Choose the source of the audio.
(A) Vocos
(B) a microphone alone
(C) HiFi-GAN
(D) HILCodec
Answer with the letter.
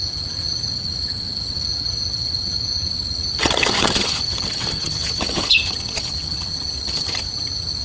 C